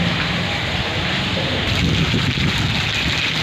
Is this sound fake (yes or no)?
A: no